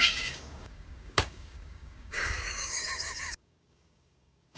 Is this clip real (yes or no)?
no